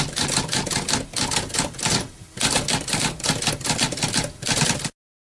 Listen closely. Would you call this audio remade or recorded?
recorded